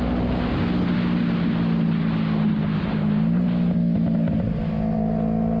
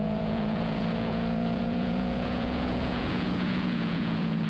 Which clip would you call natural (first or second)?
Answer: first